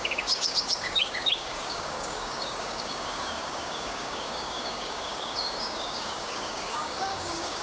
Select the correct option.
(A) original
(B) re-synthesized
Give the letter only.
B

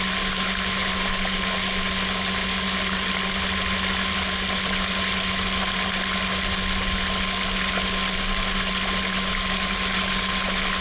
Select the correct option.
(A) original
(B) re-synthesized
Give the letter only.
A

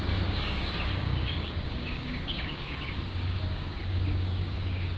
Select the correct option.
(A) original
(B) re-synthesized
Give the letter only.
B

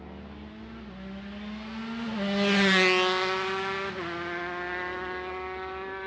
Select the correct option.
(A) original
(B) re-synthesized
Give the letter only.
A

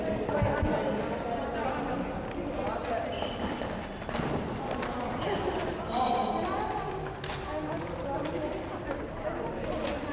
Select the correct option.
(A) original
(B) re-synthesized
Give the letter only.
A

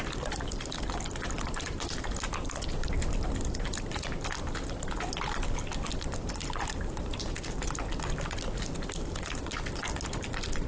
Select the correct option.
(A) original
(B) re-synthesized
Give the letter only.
A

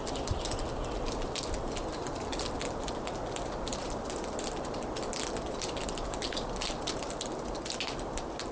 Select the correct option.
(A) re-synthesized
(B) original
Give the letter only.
B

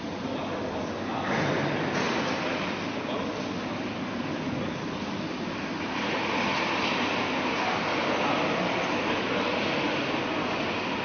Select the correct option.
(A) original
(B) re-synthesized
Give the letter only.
A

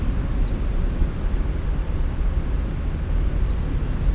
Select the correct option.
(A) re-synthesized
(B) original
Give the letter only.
B